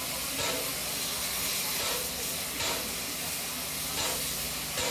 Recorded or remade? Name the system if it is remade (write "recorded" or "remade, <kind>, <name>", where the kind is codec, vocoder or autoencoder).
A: recorded